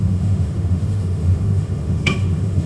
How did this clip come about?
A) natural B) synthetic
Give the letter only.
B